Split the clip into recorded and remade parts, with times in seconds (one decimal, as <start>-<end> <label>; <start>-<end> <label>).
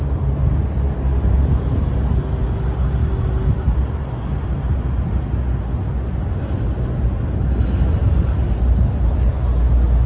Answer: 0.0-8.0 recorded; 8.0-9.3 remade; 9.3-10.1 recorded